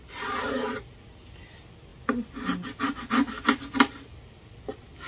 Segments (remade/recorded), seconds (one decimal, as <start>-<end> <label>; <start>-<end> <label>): 0.0-5.1 recorded